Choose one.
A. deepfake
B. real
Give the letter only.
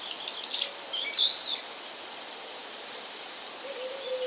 B